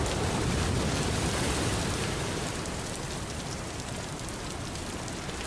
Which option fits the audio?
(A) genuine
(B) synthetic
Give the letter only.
A